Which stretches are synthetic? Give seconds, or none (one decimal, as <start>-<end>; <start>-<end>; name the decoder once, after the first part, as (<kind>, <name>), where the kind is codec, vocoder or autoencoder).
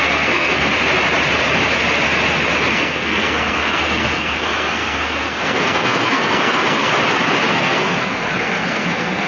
0.0-0.7 (codec, SNAC); 2.7-6.9; 7.5-9.3